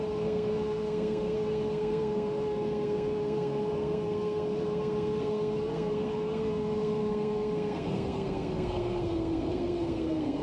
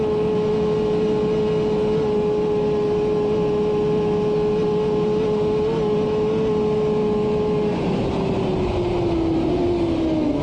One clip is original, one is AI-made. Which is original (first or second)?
second